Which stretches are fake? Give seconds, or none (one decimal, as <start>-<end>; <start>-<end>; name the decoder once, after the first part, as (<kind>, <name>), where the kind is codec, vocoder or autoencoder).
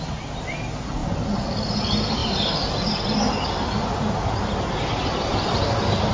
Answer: none